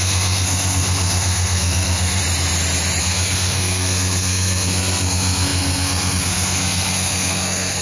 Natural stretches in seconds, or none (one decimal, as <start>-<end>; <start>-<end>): 2.2-3.0